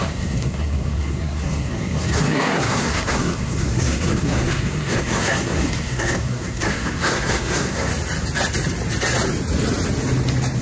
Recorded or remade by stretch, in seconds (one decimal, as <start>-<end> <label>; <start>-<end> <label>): 0.0-7.9 remade; 7.9-10.6 recorded

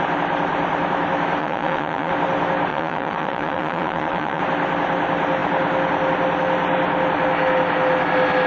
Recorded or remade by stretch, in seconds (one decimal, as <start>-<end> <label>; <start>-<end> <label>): 0.0-1.4 recorded; 1.4-2.1 remade; 2.1-2.7 recorded; 2.7-4.4 remade; 4.4-8.5 recorded

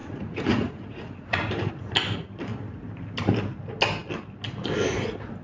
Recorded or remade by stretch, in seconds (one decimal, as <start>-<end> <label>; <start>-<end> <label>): 0.0-1.9 remade; 1.9-5.4 recorded

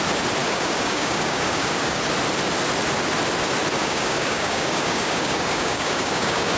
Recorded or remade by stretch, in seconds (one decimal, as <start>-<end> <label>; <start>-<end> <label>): 0.0-0.4 recorded; 0.4-2.0 remade; 2.0-3.8 recorded; 3.8-6.6 remade

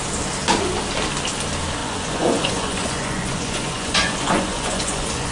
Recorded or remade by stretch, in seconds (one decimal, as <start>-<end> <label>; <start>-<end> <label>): 0.0-1.8 recorded; 1.8-5.3 remade